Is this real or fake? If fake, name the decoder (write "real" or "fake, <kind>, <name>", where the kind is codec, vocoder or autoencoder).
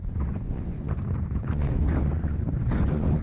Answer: fake, vocoder, Vocos